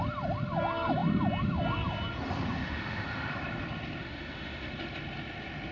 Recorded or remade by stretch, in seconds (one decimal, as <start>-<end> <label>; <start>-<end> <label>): 0.0-2.6 recorded; 2.6-3.3 remade; 3.3-4.0 recorded; 4.0-4.7 remade; 4.7-5.7 recorded

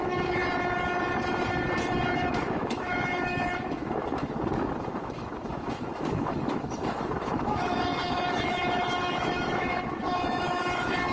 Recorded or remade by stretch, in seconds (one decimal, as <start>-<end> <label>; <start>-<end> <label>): 0.0-0.4 remade; 0.4-2.1 recorded; 2.1-11.1 remade

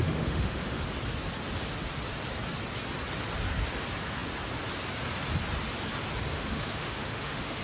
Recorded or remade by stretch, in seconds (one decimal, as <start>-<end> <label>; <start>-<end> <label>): 0.0-0.8 remade; 0.8-6.3 recorded; 6.3-7.6 remade

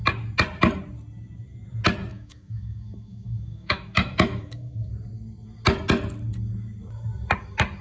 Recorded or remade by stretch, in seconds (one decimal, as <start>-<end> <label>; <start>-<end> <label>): 0.0-2.1 recorded; 2.1-4.9 remade; 4.9-7.8 recorded

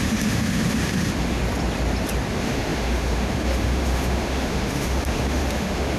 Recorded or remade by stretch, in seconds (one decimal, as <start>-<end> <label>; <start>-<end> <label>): 0.0-1.4 remade; 1.4-2.3 recorded; 2.3-6.0 remade

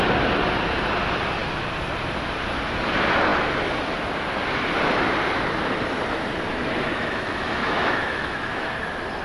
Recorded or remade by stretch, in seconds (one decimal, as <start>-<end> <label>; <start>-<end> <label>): 0.0-6.5 recorded; 6.5-8.7 remade; 8.7-9.2 recorded

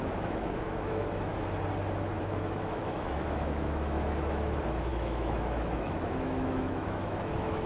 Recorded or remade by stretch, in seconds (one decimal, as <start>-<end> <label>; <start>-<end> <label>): 0.0-1.3 remade; 1.3-2.2 recorded; 2.2-7.7 remade

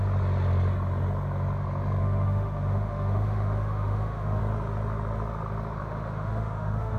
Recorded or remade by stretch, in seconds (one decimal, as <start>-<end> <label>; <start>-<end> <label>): 0.0-2.0 recorded; 2.0-4.4 remade; 4.4-5.8 recorded; 5.8-7.0 remade